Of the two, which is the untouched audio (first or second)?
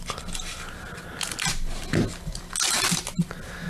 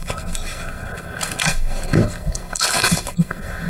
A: first